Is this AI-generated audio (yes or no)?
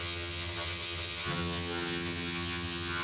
yes